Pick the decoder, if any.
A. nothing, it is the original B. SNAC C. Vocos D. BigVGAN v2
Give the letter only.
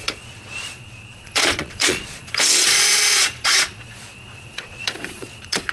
C